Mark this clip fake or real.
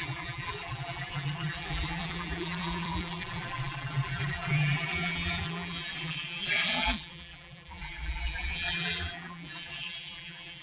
fake